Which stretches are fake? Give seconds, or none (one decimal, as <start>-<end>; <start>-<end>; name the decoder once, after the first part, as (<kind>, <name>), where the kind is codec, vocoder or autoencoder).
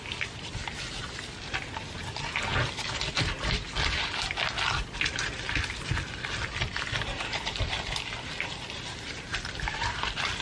none